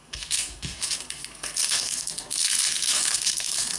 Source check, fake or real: fake